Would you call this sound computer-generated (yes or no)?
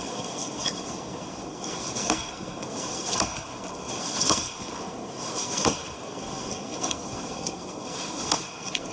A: yes